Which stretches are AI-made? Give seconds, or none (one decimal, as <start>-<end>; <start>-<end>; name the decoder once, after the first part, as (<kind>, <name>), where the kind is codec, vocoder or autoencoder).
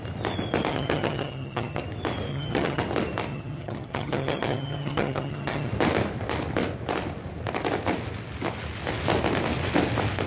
0.7-1.8 (vocoder, HiFi-GAN); 2.3-2.8; 3.3-5.7